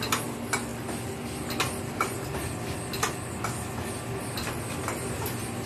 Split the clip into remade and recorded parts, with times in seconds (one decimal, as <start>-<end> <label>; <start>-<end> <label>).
0.0-5.7 recorded

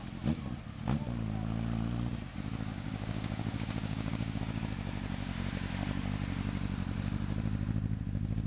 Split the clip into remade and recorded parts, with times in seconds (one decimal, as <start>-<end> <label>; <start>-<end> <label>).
0.0-2.7 recorded; 2.7-4.4 remade; 4.4-8.5 recorded

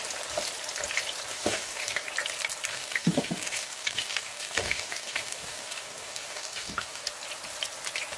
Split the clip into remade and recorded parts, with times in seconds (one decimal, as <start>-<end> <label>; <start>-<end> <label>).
0.0-1.3 recorded; 1.3-2.1 remade; 2.1-2.7 recorded; 2.7-7.1 remade; 7.1-8.2 recorded

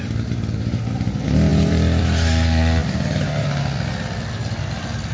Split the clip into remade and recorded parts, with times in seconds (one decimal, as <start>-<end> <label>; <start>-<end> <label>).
0.0-5.1 recorded

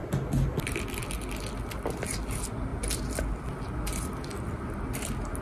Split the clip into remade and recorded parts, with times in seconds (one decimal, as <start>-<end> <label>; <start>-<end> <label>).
0.0-5.4 recorded

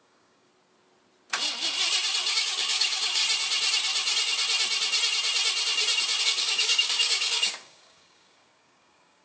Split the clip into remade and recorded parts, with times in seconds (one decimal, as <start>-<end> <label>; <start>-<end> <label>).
0.0-0.5 remade; 0.5-2.3 recorded; 2.3-3.2 remade; 3.2-6.2 recorded; 6.2-9.2 remade

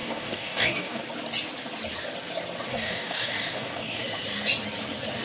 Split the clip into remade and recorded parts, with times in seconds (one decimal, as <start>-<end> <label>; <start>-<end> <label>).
0.0-1.0 remade; 1.0-2.7 recorded; 2.7-4.0 remade; 4.0-5.2 recorded

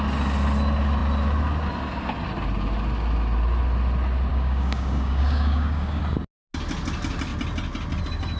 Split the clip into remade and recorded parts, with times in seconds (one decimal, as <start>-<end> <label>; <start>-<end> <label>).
0.0-4.3 recorded; 4.3-6.0 remade; 6.0-8.4 recorded